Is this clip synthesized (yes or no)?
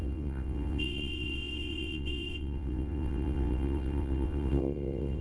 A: yes